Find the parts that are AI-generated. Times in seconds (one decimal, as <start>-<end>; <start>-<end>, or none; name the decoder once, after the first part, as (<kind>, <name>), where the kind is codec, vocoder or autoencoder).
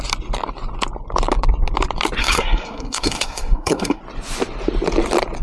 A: 2.2-4.0 (codec, SNAC)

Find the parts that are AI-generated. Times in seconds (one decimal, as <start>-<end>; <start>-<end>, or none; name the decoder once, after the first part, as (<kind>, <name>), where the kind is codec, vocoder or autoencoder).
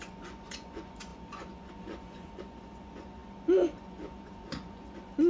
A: 0.0-5.3 (vocoder, Vocos)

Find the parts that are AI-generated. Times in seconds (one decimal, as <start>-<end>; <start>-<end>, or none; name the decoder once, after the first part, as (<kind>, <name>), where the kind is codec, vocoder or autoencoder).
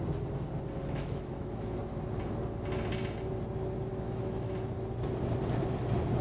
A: 0.8-1.8 (autoencoder, DAC-VAE); 3.9-4.5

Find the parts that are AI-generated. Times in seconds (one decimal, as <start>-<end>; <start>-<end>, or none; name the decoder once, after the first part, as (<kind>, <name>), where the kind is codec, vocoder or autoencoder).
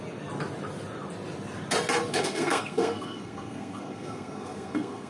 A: 2.1-5.1 (codec, SNAC)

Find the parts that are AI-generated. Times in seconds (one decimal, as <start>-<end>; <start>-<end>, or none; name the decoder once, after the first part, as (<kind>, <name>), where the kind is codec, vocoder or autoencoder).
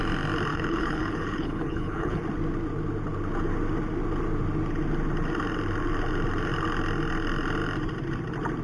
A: 0.5-2.2 (codec, HILCodec)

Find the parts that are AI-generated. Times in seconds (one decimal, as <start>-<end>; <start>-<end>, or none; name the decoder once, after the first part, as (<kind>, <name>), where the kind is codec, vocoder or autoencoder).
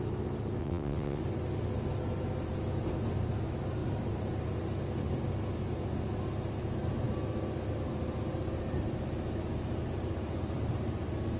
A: 0.6-1.2 (vocoder, WaveNeXt)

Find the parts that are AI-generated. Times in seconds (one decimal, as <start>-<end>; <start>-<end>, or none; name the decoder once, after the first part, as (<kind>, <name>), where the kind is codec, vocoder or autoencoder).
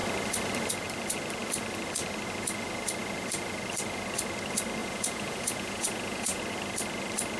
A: 4.8-6.4 (vocoder, Vocos)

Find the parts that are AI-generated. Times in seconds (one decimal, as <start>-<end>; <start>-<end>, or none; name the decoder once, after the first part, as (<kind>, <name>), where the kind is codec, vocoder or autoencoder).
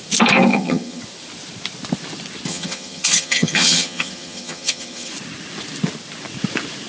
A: 0.5-1.0 (vocoder, HiFi-GAN); 2.5-5.1